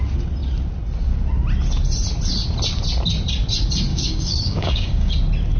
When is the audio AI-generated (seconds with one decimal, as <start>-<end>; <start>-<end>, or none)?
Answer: 3.9-5.1